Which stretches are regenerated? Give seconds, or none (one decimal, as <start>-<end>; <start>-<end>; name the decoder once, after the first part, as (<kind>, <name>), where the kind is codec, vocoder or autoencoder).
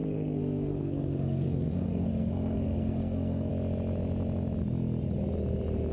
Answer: 0.0-3.5 (codec, SNAC)